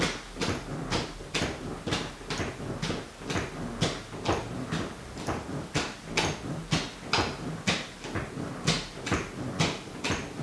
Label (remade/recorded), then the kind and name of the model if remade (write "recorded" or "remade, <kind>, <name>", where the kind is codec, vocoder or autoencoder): recorded